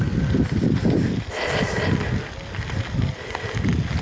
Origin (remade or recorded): recorded